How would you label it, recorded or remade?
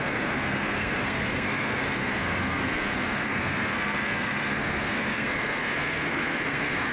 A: remade